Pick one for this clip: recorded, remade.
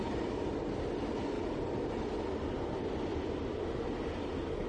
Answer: recorded